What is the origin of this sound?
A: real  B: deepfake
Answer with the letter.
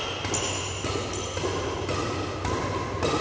A